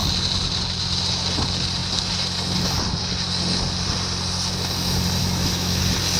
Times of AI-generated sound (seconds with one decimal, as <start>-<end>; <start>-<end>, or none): 5.2-5.8